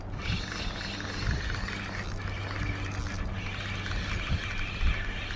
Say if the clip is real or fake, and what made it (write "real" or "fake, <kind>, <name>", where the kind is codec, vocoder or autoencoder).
real